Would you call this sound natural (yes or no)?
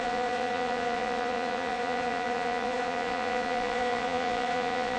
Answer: no